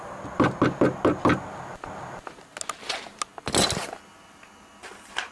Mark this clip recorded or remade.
recorded